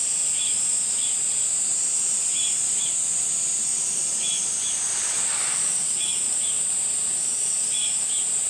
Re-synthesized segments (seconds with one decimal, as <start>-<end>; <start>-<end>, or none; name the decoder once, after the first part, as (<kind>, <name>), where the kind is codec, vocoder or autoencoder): none

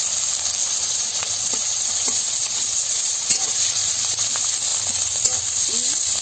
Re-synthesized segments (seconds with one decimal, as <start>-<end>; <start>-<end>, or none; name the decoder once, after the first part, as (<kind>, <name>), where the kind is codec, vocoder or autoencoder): 0.6-4.3 (vocoder, WaveNeXt)

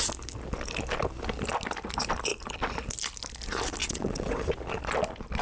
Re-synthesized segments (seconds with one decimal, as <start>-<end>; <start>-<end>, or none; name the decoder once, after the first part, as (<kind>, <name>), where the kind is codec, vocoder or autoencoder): 3.8-4.5 (vocoder, WaveNeXt)

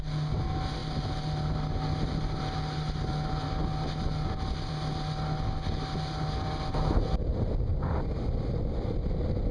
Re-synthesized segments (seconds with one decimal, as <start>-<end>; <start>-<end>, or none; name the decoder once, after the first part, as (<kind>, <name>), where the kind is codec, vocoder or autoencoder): none

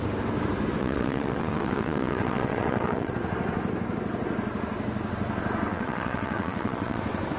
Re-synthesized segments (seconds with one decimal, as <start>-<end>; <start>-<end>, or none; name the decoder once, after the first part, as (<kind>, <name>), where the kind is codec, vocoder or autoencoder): 0.8-3.1 (vocoder, WaveNeXt); 5.7-7.0

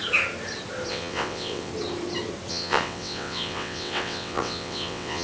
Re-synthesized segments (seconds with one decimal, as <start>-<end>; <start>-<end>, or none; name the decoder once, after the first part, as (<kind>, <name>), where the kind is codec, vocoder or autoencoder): 0.9-1.7 (vocoder, WaveNeXt); 2.5-5.2

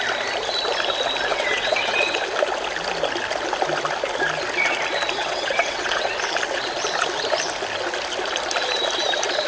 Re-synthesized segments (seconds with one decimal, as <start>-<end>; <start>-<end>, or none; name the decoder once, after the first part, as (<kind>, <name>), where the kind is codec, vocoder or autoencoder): 1.3-2.2 (vocoder, WaveNeXt); 5.2-6.1

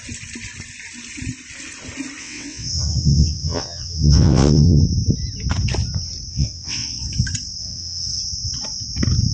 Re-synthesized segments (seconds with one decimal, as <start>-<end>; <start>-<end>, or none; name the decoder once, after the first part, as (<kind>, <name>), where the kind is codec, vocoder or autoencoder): 2.2-4.8 (vocoder, WaveNeXt); 6.3-7.1; 7.6-8.2